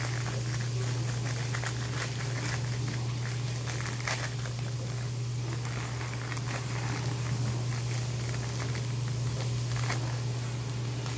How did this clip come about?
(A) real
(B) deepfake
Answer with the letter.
A